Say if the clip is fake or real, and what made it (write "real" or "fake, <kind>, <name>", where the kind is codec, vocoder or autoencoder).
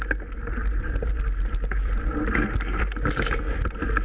real